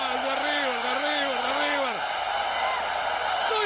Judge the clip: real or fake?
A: real